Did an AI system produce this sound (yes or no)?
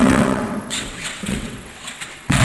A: yes